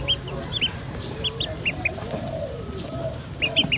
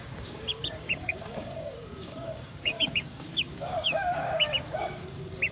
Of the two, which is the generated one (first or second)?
second